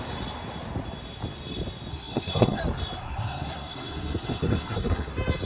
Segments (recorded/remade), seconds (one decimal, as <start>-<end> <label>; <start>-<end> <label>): 0.0-1.9 recorded; 1.9-2.6 remade; 2.6-3.0 recorded; 3.0-5.1 remade; 5.1-5.5 recorded